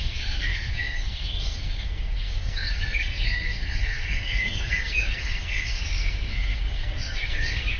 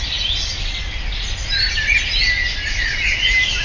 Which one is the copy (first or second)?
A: first